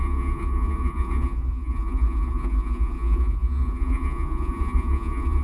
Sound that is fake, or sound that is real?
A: fake